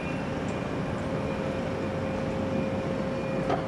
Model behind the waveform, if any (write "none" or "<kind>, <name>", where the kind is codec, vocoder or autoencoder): none